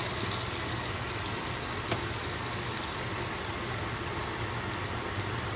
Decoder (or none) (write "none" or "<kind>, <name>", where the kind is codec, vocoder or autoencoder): none